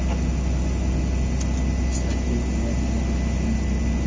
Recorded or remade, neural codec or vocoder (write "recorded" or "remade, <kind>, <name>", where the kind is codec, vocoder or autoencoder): recorded